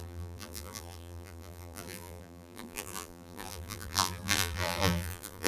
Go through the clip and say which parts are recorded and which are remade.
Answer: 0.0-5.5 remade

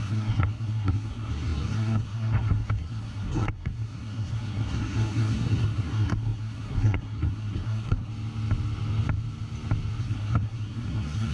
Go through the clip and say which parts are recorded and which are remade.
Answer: 0.0-8.1 remade; 8.1-10.0 recorded; 10.0-11.3 remade

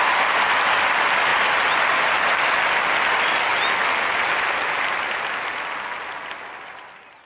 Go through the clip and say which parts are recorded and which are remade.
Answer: 0.0-7.3 recorded

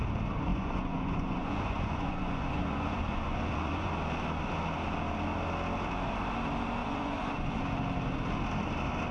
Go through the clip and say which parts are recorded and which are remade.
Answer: 0.0-0.5 recorded; 0.5-3.9 remade; 3.9-6.8 recorded; 6.8-7.6 remade; 7.6-9.1 recorded